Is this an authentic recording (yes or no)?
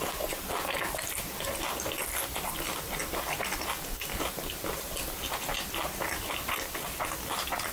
yes